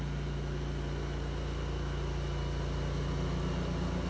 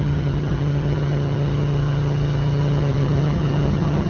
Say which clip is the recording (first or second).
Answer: first